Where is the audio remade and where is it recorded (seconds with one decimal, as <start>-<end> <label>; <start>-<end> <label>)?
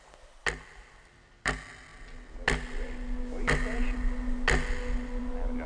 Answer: 0.0-5.7 recorded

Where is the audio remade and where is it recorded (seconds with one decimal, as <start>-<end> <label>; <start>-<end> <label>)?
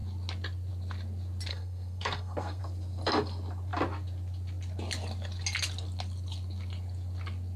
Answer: 0.0-1.5 recorded; 1.5-2.6 remade; 2.6-7.6 recorded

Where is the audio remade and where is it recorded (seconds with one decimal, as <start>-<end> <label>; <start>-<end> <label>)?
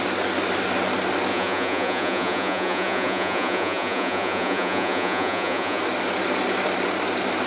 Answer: 0.0-1.3 recorded; 1.3-5.8 remade; 5.8-7.5 recorded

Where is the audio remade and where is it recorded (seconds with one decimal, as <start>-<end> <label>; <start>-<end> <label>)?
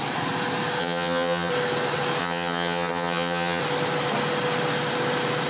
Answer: 0.0-0.8 recorded; 0.8-1.5 remade; 1.5-2.2 recorded; 2.2-3.6 remade; 3.6-5.5 recorded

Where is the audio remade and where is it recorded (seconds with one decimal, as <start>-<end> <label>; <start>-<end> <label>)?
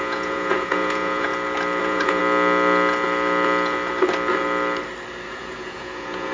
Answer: 0.0-1.3 remade; 1.3-1.8 recorded; 1.8-2.2 remade; 2.2-5.3 recorded; 5.3-6.3 remade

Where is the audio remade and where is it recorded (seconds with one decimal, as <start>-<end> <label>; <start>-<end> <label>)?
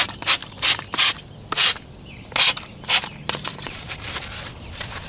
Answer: 0.0-0.4 recorded; 0.4-1.2 remade; 1.2-3.5 recorded; 3.5-4.4 remade; 4.4-5.1 recorded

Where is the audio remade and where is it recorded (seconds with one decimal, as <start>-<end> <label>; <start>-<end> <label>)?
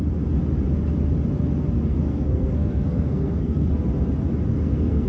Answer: 0.0-1.9 recorded; 1.9-3.7 remade; 3.7-4.5 recorded; 4.5-5.1 remade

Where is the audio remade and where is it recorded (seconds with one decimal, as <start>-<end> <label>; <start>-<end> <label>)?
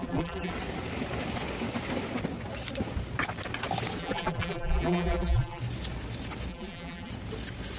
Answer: 0.0-0.5 remade; 0.5-4.0 recorded; 4.0-5.6 remade; 5.6-6.5 recorded; 6.5-7.1 remade; 7.1-7.8 recorded